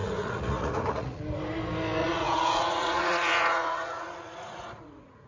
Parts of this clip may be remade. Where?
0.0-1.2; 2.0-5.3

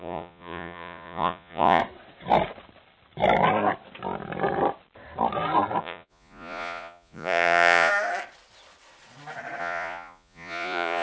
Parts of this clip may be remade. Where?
0.0-1.8; 5.8-7.9; 9.6-11.0

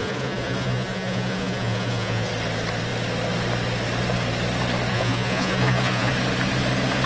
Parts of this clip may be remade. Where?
0.0-2.3; 4.9-6.1